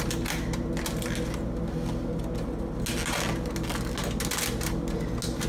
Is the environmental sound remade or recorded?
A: recorded